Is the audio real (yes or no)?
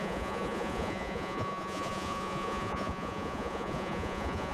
no